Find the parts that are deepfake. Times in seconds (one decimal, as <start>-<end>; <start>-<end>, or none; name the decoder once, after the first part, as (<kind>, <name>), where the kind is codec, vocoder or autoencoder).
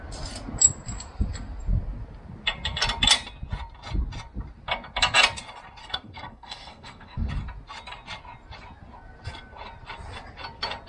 5.8-7.3 (codec, SNAC)